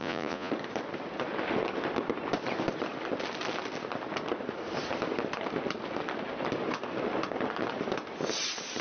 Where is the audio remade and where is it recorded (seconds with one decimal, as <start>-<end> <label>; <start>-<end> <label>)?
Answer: 0.0-0.5 remade; 0.5-8.8 recorded